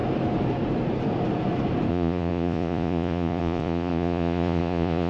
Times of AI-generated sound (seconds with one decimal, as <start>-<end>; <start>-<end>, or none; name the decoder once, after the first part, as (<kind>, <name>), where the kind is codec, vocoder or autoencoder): 1.9-5.1 (vocoder, Vocos)